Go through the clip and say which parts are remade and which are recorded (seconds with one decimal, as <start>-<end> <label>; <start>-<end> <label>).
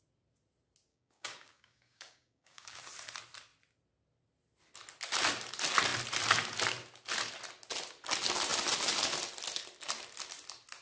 0.0-0.9 recorded; 0.9-2.8 remade; 2.8-10.8 recorded